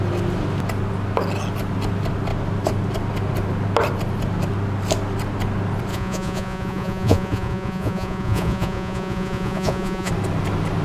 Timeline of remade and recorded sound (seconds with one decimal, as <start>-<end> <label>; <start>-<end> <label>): 0.0-5.9 recorded; 5.9-10.1 remade; 10.1-10.8 recorded